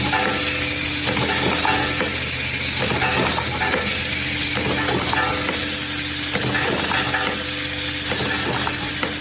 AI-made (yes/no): no